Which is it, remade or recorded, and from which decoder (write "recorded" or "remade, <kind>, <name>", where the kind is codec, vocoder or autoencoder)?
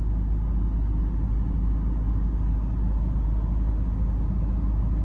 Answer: recorded